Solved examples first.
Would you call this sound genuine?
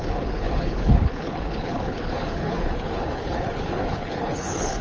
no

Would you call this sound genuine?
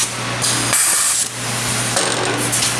yes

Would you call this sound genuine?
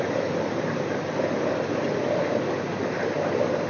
yes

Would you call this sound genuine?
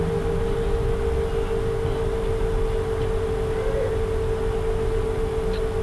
yes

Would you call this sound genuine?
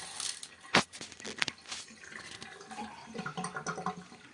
yes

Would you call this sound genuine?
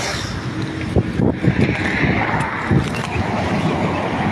yes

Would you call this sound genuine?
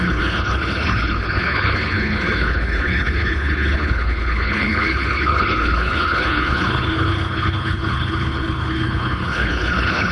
no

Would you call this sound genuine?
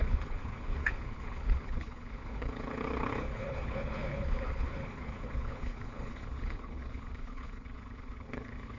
no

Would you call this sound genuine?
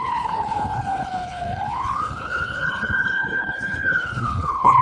no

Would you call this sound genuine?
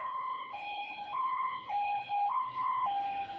no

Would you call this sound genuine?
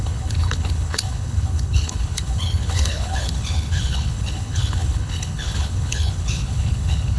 no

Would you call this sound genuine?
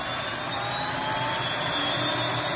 yes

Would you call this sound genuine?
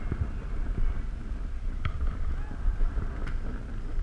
yes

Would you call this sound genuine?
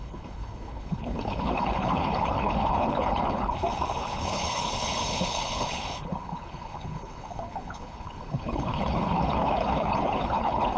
no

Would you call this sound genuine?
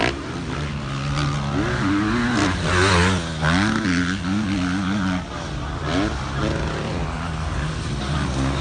yes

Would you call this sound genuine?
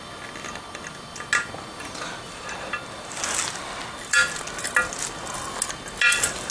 yes